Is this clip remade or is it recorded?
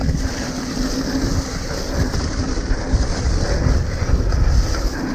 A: recorded